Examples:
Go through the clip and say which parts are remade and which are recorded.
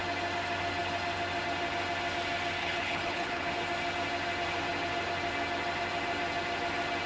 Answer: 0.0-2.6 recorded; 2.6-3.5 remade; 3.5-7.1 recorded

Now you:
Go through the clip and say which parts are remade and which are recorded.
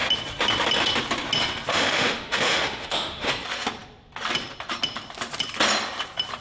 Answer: 0.0-1.7 recorded; 1.7-3.3 remade; 3.3-6.4 recorded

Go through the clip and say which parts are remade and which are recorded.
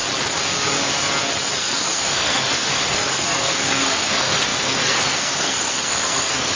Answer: 0.0-1.6 recorded; 1.6-6.6 remade